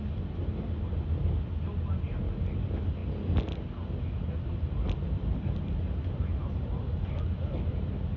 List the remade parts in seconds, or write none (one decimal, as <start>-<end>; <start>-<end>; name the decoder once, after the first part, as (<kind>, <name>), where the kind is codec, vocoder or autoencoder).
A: none